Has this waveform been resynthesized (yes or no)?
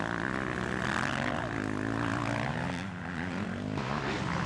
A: no